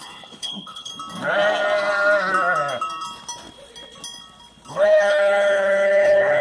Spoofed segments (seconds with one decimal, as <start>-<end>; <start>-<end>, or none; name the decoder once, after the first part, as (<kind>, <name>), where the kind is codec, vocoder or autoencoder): 0.0-0.9 (codec, HILCodec); 4.7-6.4